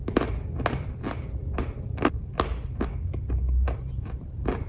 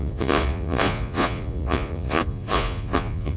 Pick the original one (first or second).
first